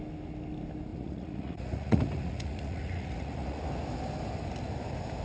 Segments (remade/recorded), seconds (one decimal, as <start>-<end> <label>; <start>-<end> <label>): 0.0-0.9 recorded; 0.9-3.6 remade; 3.6-5.2 recorded